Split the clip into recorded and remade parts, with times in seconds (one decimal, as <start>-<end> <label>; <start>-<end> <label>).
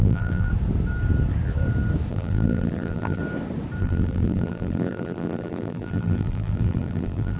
0.0-0.5 remade; 0.5-2.1 recorded; 2.1-3.2 remade; 3.2-3.8 recorded; 3.8-7.4 remade